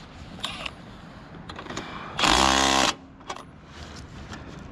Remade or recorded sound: recorded